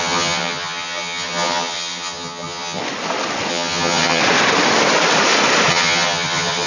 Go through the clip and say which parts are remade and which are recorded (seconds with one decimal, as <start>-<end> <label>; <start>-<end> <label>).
0.0-2.8 remade; 2.8-3.5 recorded; 3.5-4.2 remade; 4.2-5.7 recorded; 5.7-6.7 remade